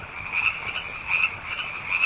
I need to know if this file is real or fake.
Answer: real